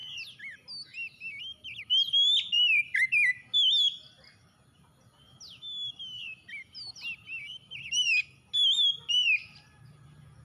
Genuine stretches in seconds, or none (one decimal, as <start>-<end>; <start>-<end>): 0.0-10.4